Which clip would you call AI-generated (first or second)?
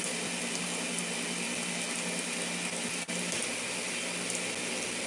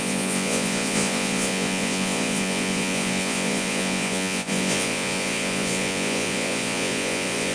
second